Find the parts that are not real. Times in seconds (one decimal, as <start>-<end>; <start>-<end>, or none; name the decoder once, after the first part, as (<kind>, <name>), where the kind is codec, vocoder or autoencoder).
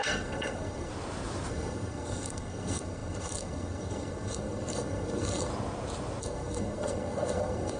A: 0.0-0.9 (codec, SNAC); 1.5-5.5; 6.2-7.8